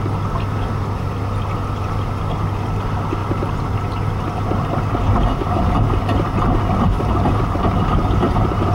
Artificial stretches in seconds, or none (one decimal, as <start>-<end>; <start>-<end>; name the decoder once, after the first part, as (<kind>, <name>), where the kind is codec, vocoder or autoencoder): none